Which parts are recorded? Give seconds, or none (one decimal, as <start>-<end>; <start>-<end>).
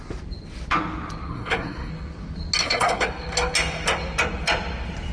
0.0-1.3; 1.9-2.6; 3.1-5.1